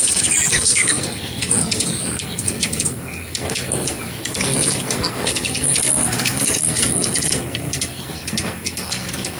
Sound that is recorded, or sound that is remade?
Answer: remade